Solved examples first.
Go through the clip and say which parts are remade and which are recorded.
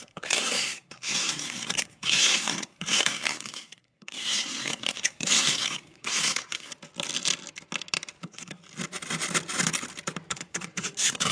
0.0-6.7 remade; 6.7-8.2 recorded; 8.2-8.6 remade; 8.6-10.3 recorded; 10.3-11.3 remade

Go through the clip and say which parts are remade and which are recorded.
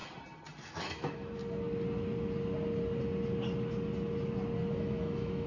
0.0-0.7 recorded; 0.7-1.4 remade; 1.4-4.7 recorded; 4.7-5.5 remade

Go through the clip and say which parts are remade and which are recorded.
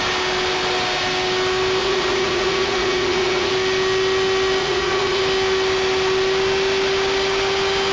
0.0-1.8 recorded; 1.8-3.5 remade; 3.5-4.6 recorded; 4.6-5.2 remade; 5.2-7.9 recorded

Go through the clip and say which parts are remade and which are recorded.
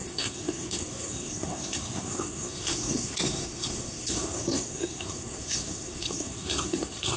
0.0-7.2 remade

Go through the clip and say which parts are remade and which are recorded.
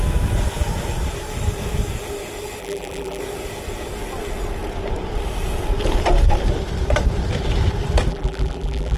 0.0-2.6 recorded; 2.6-3.2 remade; 3.2-8.1 recorded; 8.1-9.0 remade